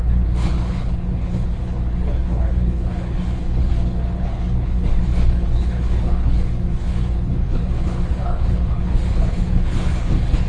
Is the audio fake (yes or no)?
yes